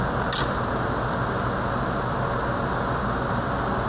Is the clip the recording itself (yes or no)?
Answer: yes